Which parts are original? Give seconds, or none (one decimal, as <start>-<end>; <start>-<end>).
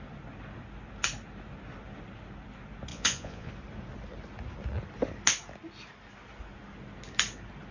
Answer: 0.0-2.9; 3.5-7.7